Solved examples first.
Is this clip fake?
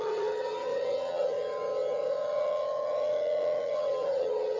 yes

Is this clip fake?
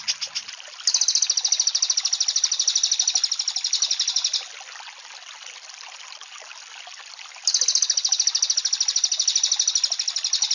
no